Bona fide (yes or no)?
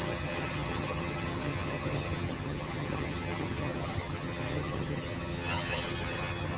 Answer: no